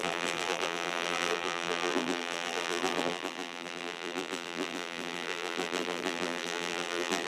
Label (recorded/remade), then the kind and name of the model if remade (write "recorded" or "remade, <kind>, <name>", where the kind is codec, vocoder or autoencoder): remade, vocoder, BigVGAN v2